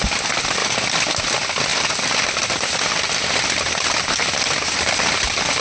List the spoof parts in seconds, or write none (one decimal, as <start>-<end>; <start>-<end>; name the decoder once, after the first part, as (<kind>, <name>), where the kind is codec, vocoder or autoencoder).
none